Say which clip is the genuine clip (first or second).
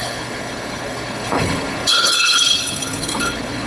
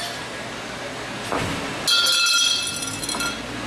second